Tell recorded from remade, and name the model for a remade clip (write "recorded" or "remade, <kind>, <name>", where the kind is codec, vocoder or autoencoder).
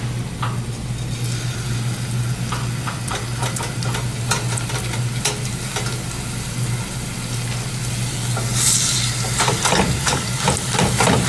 recorded